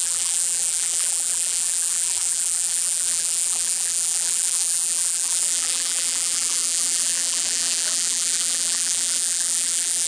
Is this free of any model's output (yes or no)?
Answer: no